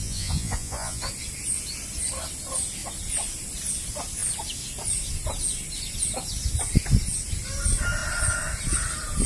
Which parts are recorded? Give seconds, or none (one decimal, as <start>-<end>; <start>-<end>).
1.0-9.3